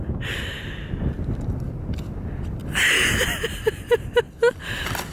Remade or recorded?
recorded